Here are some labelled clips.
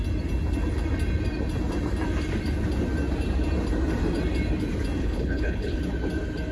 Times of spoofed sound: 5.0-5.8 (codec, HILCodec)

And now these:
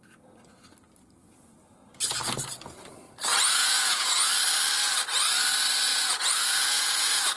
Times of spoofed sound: 3.3-4.3 (vocoder, Vocos); 5.9-7.4

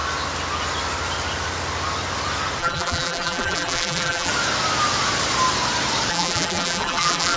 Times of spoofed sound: 2.6-4.3 (vocoder, BigVGAN v2); 6.1-7.4

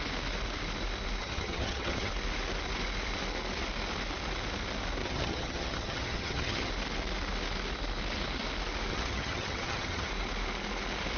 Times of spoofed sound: 1.2-2.1 (vocoder, HiFi-GAN); 5.0-6.7; 8.9-10.1

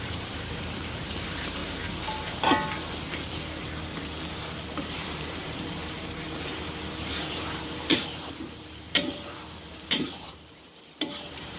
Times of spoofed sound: 0.0-1.6 (vocoder, BigVGAN v2); 4.7-11.6